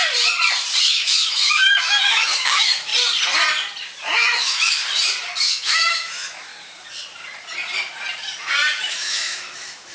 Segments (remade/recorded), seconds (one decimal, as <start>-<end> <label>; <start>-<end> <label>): 0.0-0.8 recorded; 0.8-2.9 remade; 2.9-4.1 recorded; 4.1-4.8 remade; 4.8-5.4 recorded; 5.4-6.5 remade; 6.5-8.8 recorded; 8.8-9.9 remade

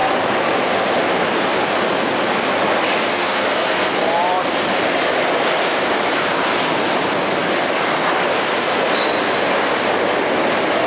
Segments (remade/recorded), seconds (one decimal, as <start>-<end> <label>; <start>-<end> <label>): 0.0-3.1 recorded; 3.1-3.9 remade; 3.9-10.9 recorded

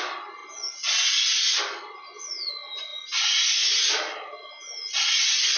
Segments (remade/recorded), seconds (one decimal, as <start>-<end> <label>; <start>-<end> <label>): 0.0-5.6 recorded

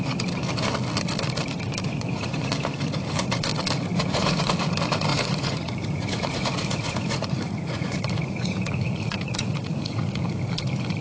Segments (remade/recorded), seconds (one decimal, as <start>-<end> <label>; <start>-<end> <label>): 0.0-1.9 recorded; 1.9-2.5 remade; 2.5-3.9 recorded; 3.9-4.5 remade; 4.5-5.1 recorded; 5.1-10.2 remade; 10.2-11.0 recorded